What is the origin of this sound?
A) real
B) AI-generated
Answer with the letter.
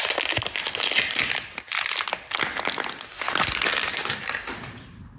A